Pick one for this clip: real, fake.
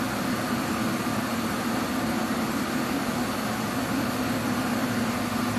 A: real